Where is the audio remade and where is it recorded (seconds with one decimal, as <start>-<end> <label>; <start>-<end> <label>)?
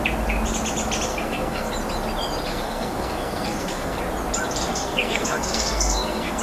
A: 0.0-1.1 recorded; 1.1-1.7 remade; 1.7-2.5 recorded; 2.5-4.0 remade; 4.0-4.7 recorded; 4.7-6.4 remade